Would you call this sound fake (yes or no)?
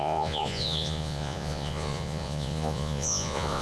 yes